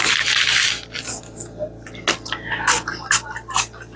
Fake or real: real